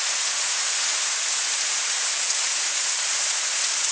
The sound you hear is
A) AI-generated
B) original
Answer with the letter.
A